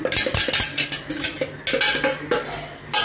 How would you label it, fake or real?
real